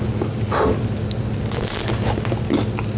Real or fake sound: real